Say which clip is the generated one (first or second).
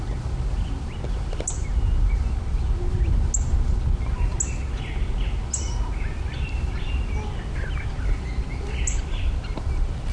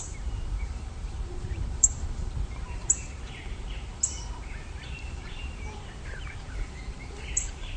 second